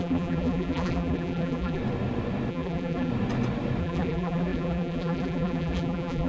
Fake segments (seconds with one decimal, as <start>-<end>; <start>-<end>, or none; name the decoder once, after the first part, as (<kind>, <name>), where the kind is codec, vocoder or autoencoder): 0.0-1.8 (vocoder, BigVGAN v2); 2.5-3.1; 3.8-6.3